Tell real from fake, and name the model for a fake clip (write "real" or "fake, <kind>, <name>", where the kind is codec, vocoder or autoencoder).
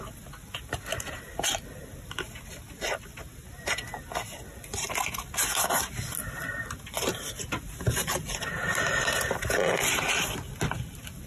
real